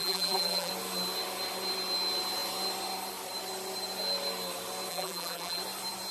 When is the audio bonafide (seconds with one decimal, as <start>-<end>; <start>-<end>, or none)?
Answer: 0.7-4.9; 5.6-6.1